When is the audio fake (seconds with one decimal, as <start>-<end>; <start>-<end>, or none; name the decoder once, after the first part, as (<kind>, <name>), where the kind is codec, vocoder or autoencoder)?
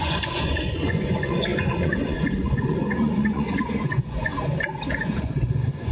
0.0-4.3 (vocoder, Vocos); 5.0-5.9